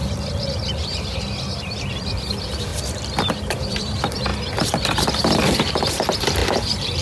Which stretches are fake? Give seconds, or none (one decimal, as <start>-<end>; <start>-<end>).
0.0-2.7; 3.4-4.3; 5.1-7.0